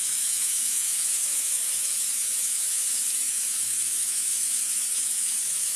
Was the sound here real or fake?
fake